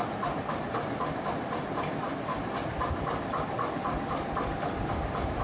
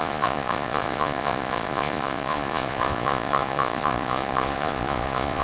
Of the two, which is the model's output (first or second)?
second